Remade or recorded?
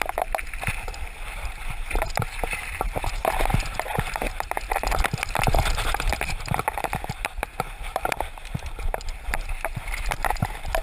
remade